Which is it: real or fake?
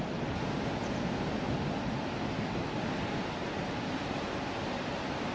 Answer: real